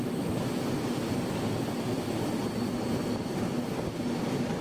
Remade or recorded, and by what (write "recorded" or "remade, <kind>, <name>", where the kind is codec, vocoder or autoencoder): recorded